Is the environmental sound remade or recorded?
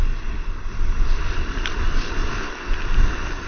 recorded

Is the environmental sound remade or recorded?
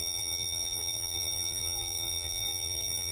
remade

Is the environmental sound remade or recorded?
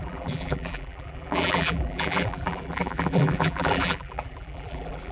remade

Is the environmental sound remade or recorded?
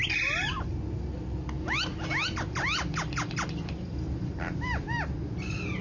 recorded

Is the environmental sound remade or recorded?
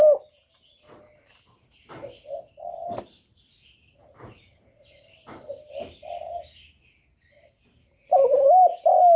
recorded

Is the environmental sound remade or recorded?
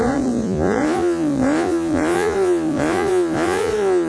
remade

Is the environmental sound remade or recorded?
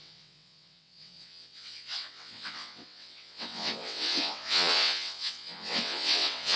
remade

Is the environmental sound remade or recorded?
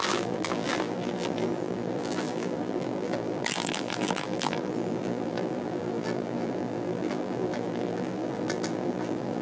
remade